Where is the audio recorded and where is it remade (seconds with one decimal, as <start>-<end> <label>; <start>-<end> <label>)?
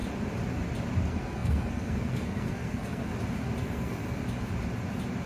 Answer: 0.0-1.0 recorded; 1.0-3.1 remade; 3.1-3.6 recorded; 3.6-4.0 remade; 4.0-5.3 recorded